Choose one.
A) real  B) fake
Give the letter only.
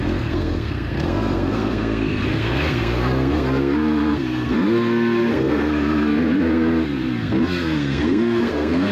B